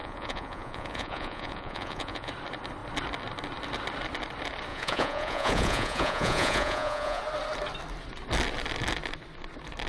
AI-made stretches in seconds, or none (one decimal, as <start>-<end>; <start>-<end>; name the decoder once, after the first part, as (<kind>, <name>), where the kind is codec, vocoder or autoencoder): 0.0-2.3 (vocoder, Vocos); 4.7-7.2